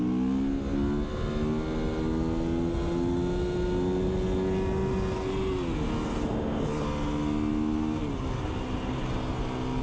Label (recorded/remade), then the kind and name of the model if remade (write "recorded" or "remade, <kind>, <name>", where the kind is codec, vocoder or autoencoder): recorded